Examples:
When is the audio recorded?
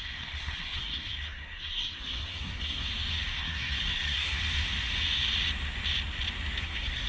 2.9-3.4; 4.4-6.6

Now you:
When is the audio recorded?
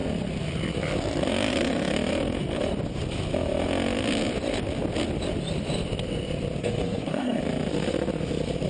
0.0-6.6; 7.4-8.7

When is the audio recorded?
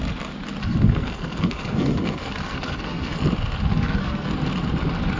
0.0-0.6; 3.2-3.7; 4.3-5.2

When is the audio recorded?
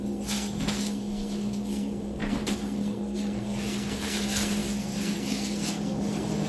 none